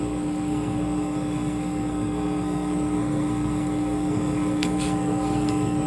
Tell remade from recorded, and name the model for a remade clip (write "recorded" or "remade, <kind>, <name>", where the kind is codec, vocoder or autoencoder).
remade, codec, SNAC